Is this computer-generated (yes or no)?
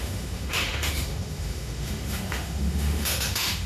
yes